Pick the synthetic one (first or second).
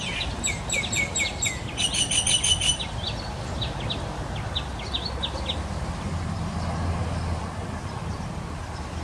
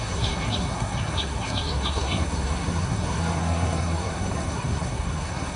second